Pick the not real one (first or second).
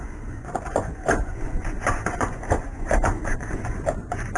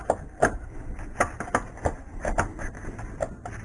first